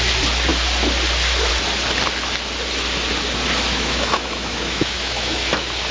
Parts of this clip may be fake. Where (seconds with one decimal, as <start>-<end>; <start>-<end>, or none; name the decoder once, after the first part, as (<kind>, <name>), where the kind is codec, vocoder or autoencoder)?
3.7-5.4 (autoencoder, DAC-VAE)

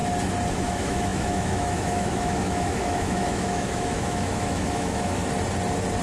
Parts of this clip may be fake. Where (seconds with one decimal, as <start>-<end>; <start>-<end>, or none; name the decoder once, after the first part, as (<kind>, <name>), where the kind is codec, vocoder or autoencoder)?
0.5-5.2 (autoencoder, DAC-VAE)